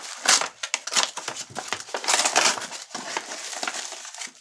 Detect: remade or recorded recorded